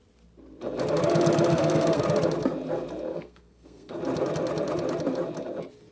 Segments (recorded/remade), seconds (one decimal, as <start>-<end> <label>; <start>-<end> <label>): 0.0-1.5 recorded; 1.5-2.0 remade; 2.0-3.1 recorded; 3.1-4.0 remade; 4.0-5.9 recorded

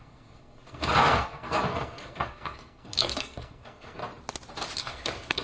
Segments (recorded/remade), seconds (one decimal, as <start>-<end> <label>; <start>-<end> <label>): 0.0-4.0 remade; 4.0-4.8 recorded; 4.8-5.4 remade

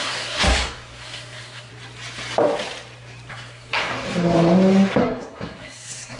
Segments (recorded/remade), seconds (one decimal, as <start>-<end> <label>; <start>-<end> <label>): 0.0-1.7 remade; 1.7-3.3 recorded; 3.3-3.9 remade; 3.9-5.0 recorded; 5.0-6.2 remade

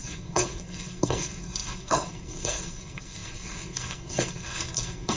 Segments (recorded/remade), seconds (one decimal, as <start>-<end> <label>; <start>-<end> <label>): 0.0-5.2 remade

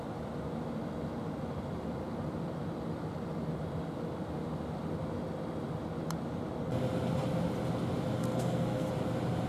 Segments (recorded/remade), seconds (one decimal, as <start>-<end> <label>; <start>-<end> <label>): 0.0-8.2 recorded; 8.2-8.9 remade; 8.9-9.5 recorded